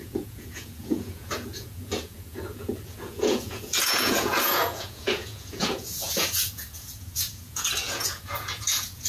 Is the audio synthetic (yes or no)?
yes